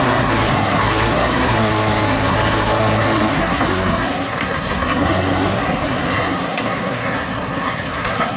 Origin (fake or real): fake